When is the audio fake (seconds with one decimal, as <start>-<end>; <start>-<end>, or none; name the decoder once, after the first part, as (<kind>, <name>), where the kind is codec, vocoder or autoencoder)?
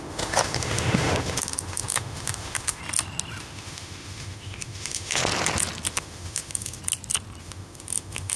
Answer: 0.0-2.8 (autoencoder, DAC-VAE); 3.4-5.2; 5.9-6.8; 7.4-8.4